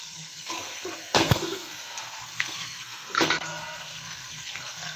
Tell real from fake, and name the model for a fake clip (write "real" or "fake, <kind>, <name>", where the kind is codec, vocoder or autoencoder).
fake, codec, SNAC